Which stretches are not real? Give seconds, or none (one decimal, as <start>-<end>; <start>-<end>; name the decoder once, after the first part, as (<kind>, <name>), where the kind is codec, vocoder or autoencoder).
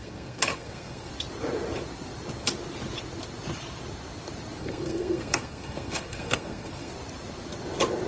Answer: 0.0-1.1 (codec, SNAC); 4.6-6.9